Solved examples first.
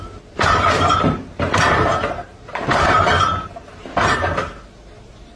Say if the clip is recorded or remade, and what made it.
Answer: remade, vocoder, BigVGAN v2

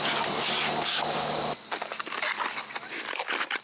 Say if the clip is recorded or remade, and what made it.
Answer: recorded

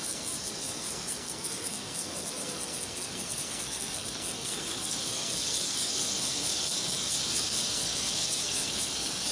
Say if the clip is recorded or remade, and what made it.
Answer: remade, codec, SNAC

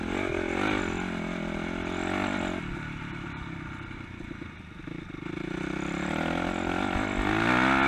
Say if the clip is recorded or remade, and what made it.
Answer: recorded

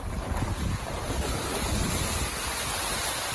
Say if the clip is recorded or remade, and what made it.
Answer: recorded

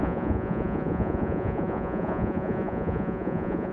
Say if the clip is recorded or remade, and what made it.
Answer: remade, vocoder, Vocos